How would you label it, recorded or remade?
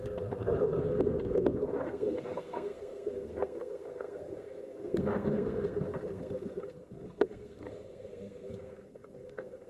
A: remade